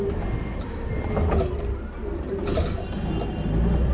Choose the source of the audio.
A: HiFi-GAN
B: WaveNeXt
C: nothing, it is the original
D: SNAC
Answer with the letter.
C